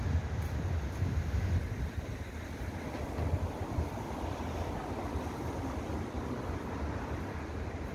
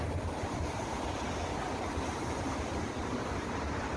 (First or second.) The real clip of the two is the first